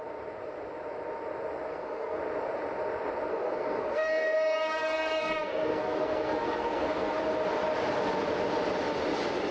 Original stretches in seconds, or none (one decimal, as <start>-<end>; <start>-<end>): 0.0-1.7; 2.2-3.3; 7.2-9.5